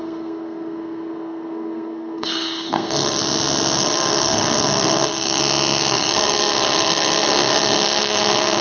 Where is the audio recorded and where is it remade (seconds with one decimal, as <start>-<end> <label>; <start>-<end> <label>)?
0.0-3.2 remade; 3.2-3.8 recorded; 3.8-5.4 remade; 5.4-5.9 recorded; 5.9-8.6 remade